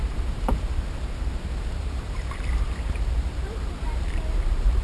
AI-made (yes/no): yes